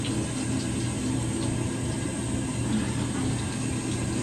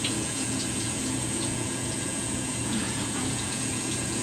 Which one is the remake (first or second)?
second